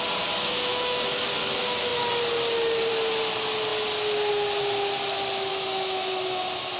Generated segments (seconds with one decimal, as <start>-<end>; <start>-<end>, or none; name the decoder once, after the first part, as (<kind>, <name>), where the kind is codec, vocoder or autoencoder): 0.7-1.3 (autoencoder, DAC-VAE); 5.5-6.8